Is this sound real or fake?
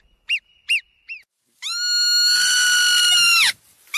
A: real